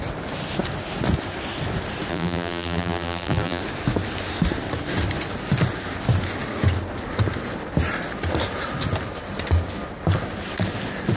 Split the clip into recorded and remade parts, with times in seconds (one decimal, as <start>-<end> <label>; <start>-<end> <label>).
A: 0.0-2.1 recorded; 2.1-3.6 remade; 3.6-11.2 recorded